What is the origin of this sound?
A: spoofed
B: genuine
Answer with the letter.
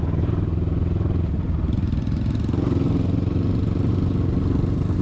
B